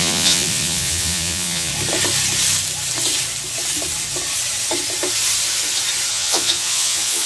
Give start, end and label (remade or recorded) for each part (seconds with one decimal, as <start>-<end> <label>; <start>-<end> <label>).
0.0-1.7 remade; 1.7-6.1 recorded; 6.1-7.3 remade